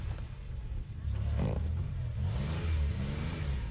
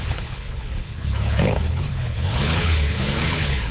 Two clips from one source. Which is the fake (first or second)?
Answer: second